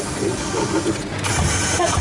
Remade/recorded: recorded